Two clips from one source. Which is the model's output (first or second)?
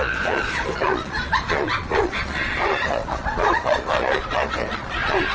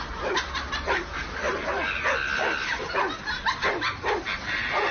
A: first